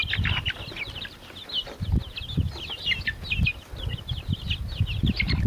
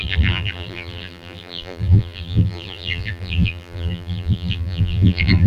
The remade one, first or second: second